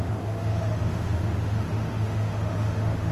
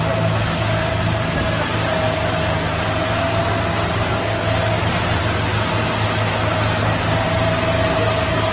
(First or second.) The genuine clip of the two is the second